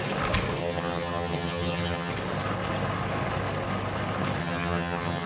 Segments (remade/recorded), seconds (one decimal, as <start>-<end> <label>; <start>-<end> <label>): 0.0-0.6 recorded; 0.6-2.1 remade; 2.1-4.4 recorded; 4.4-5.3 remade